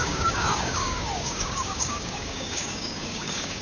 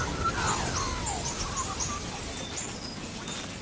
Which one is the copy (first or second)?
first